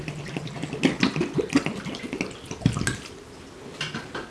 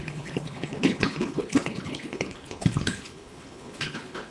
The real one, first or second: first